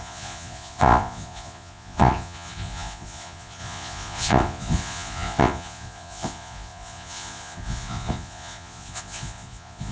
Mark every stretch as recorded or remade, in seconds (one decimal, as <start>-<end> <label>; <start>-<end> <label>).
0.0-9.9 remade